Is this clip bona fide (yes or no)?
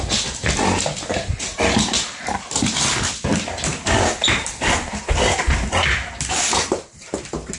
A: yes